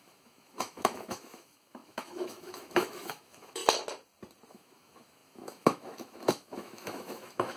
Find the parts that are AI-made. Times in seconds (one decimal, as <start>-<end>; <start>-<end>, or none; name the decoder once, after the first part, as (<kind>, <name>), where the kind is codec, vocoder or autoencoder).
0.0-3.6 (autoencoder, DAC-VAE); 4.5-7.6